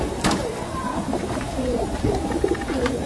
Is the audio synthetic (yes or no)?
yes